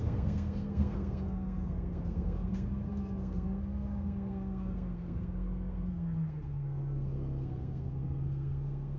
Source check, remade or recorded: remade